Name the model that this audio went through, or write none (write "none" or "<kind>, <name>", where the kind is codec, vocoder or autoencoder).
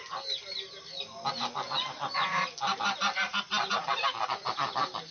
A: none